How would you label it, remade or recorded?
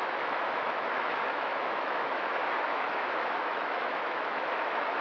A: remade